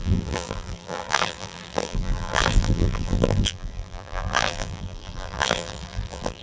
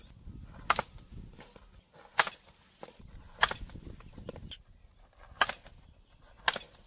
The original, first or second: second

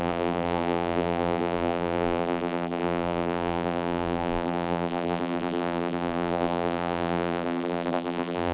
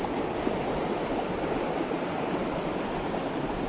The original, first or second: second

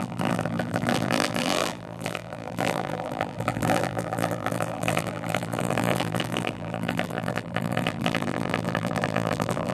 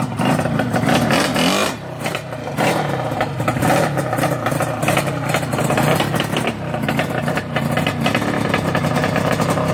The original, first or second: second